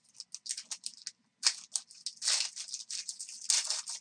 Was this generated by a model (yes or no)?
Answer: no